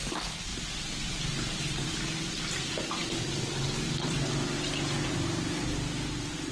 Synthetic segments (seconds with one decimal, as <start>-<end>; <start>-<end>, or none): none

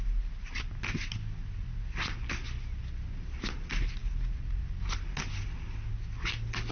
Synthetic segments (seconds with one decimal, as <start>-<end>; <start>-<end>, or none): none

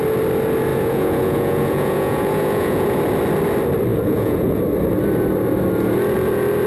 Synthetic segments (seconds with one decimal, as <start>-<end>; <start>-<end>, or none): 0.7-3.0; 3.9-4.6